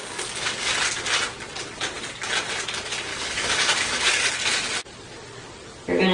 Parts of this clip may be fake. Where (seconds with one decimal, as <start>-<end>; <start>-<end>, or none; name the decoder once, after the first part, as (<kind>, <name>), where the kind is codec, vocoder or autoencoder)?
0.0-0.7 (codec, DAC); 3.1-4.3